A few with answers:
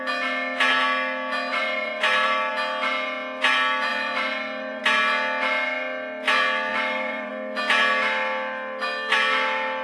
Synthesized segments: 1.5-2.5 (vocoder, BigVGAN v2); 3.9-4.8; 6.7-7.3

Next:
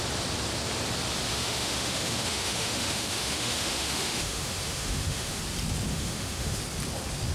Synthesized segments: 1.3-5.4 (autoencoder, DAC-VAE); 5.9-6.6

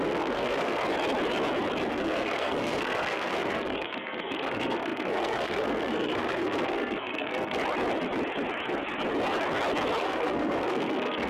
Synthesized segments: 0.0-0.8 (codec, SNAC); 1.9-7.6; 10.0-11.3

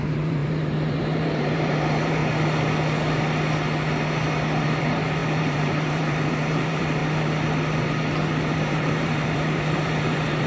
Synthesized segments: 0.0-2.2 (vocoder, BigVGAN v2); 4.8-7.0; 8.5-10.5

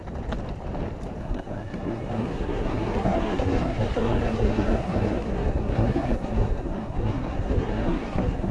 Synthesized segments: 1.2-8.5 (codec, SNAC)